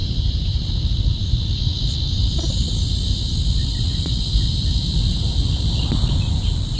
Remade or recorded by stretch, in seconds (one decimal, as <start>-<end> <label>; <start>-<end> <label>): 0.0-0.6 remade; 0.6-6.8 recorded